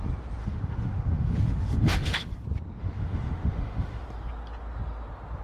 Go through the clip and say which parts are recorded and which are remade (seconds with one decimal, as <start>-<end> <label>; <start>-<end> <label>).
0.0-0.4 recorded; 0.4-2.3 remade; 2.3-2.8 recorded; 2.8-4.0 remade; 4.0-5.4 recorded